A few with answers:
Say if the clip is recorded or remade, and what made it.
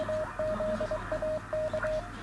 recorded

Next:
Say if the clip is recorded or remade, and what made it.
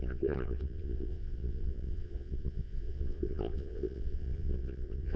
remade, vocoder, Vocos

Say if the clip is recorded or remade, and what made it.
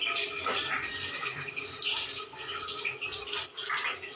recorded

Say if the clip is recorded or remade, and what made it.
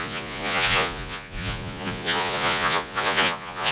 remade, vocoder, Vocos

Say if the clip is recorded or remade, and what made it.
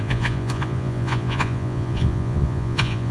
remade, vocoder, Vocos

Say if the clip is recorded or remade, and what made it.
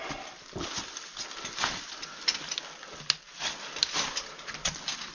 recorded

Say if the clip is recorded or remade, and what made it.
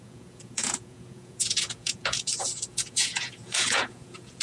remade, vocoder, Vocos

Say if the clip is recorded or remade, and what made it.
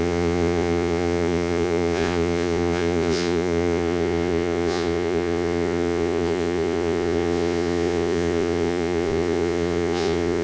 remade, vocoder, Vocos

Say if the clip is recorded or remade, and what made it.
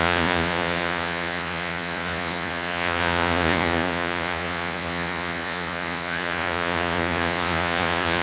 remade, vocoder, Vocos